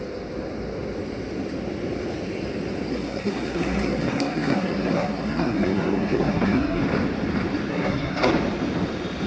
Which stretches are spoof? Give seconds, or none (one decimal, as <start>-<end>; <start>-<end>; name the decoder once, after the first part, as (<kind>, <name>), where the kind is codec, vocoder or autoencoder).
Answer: 2.9-6.8 (codec, SNAC); 7.7-8.3